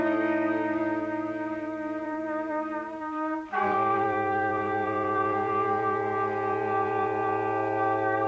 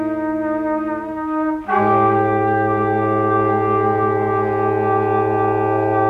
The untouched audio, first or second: second